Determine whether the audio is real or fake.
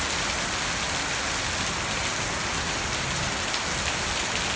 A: real